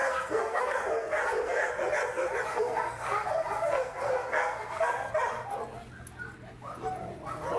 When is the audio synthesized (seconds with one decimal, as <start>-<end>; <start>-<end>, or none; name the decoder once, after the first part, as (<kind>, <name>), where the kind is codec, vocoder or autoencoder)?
0.0-1.7 (codec, SNAC); 2.5-5.1